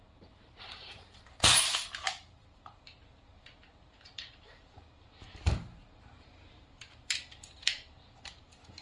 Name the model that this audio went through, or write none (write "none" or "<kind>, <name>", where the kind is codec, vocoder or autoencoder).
vocoder, BigVGAN v2